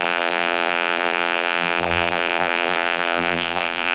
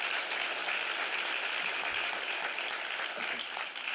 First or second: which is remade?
first